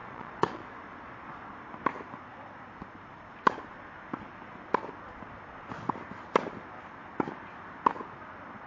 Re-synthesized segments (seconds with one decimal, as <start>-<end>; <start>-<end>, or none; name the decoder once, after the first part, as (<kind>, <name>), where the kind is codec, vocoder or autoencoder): 0.0-1.5 (vocoder, Vocos)